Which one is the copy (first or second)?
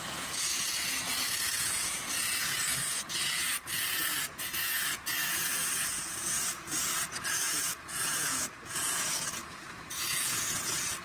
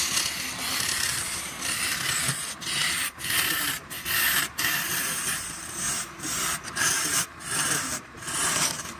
first